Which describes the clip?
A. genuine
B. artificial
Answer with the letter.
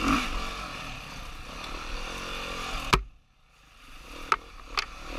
A